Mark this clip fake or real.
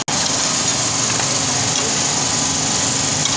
real